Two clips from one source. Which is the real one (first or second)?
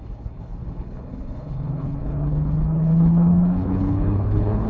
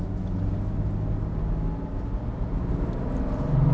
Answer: second